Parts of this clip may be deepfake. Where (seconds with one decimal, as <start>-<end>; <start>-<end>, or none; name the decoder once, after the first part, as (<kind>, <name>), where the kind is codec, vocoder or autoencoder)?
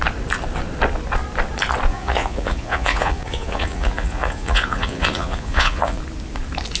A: 1.9-6.0 (vocoder, Vocos)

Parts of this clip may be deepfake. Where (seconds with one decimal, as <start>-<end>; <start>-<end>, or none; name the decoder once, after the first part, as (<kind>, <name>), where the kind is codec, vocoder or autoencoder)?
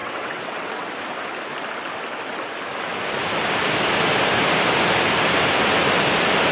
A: 0.0-0.9 (vocoder, WaveNeXt)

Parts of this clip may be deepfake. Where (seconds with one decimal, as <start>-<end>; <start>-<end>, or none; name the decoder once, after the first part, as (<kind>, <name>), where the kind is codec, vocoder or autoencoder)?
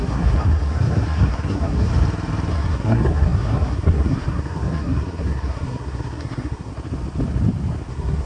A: 0.0-1.9 (codec, SNAC); 2.5-6.7; 7.9-8.3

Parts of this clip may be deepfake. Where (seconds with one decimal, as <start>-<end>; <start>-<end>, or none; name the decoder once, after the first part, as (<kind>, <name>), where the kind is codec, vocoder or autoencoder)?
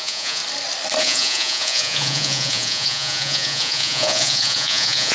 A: 0.0-0.4 (vocoder, Vocos); 1.0-5.1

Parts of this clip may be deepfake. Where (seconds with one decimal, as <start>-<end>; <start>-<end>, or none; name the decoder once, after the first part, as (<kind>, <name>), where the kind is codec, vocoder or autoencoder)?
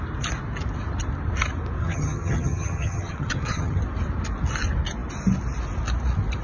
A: 1.8-3.8 (vocoder, HiFi-GAN)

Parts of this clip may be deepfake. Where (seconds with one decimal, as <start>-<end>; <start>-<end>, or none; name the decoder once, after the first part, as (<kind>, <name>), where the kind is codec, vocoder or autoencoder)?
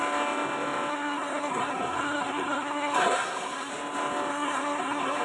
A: 0.9-3.7 (codec, SNAC); 4.3-5.2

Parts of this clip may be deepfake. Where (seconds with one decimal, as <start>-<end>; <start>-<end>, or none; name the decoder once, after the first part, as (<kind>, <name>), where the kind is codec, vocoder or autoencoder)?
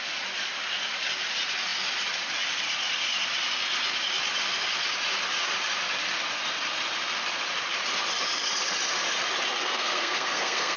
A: 9.6-10.8 (codec, SNAC)